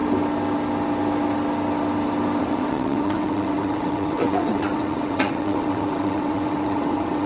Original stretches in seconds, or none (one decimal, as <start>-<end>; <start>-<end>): 0.0-2.4